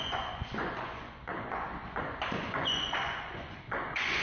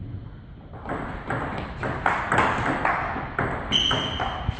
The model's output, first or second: first